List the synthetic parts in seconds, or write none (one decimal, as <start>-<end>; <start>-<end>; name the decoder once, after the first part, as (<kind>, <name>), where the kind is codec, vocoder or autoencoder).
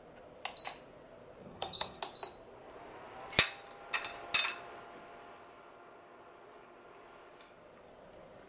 1.4-2.0 (codec, SNAC)